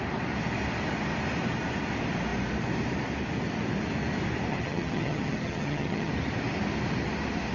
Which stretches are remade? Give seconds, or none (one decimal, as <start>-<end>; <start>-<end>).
4.5-6.1